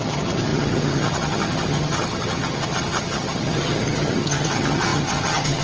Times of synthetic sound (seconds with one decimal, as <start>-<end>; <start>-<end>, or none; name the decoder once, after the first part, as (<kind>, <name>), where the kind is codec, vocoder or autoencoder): 0.0-5.6 (vocoder, HiFi-GAN)